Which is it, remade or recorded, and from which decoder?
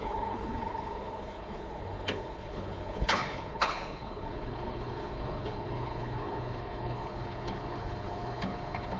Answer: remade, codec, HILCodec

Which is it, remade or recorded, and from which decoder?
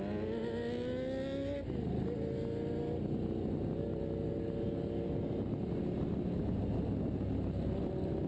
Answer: recorded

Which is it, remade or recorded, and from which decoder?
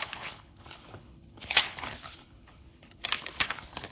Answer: remade, codec, HILCodec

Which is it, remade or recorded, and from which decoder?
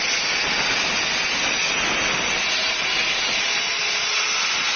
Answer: recorded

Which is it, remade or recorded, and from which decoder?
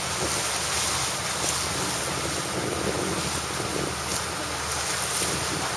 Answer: recorded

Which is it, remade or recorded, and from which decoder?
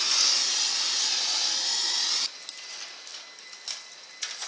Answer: recorded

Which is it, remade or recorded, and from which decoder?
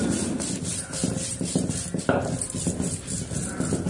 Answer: recorded